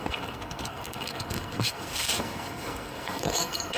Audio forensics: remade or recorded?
remade